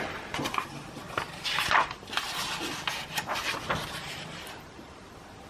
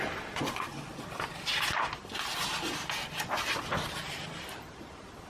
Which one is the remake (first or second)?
first